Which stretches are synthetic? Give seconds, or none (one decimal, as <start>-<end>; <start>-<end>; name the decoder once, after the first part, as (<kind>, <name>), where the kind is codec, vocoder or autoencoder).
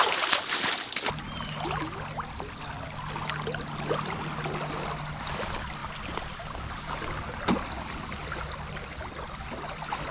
none